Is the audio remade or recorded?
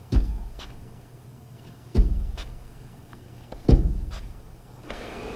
remade